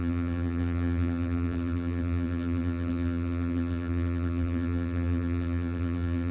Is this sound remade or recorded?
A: remade